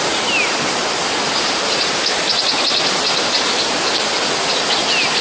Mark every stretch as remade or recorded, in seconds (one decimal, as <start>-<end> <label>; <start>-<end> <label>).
0.0-5.2 recorded